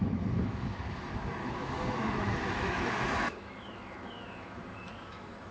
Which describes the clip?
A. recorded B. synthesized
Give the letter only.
B